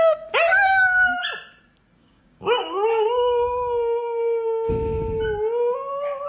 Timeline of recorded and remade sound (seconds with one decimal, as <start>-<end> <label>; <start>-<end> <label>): 0.0-0.5 recorded; 0.5-1.2 remade; 1.2-2.0 recorded; 2.0-4.7 remade; 4.7-6.3 recorded